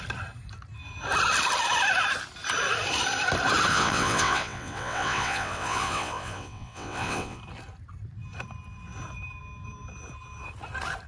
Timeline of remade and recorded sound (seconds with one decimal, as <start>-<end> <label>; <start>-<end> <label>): 0.0-3.7 recorded; 3.7-7.4 remade; 7.4-11.1 recorded